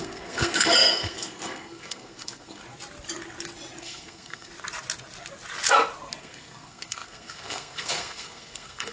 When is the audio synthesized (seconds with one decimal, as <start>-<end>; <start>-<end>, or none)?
0.0-2.6; 3.8-4.5; 6.2-8.9